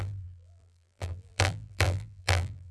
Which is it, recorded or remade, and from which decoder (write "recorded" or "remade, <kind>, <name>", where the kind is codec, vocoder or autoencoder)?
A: remade, vocoder, BigVGAN v2